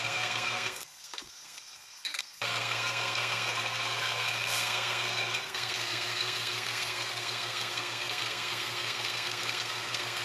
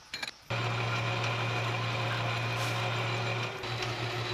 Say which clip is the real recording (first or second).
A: second